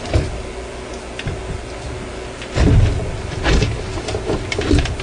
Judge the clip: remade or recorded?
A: recorded